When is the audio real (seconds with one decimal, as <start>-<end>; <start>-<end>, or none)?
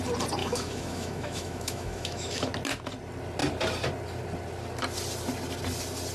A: 0.0-0.4; 2.5-6.1